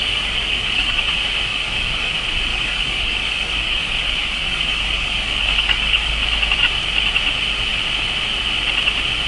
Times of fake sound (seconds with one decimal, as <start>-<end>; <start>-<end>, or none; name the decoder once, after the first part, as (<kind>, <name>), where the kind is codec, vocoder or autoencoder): 0.0-1.1 (codec, DAC); 1.5-2.1; 2.5-6.1